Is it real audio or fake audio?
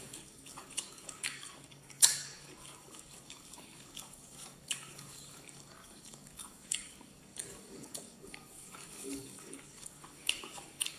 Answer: fake